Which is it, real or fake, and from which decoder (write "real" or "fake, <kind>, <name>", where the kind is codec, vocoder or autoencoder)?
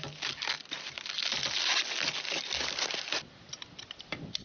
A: real